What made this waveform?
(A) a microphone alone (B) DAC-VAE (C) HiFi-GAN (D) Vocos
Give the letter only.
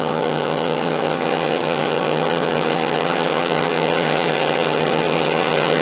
C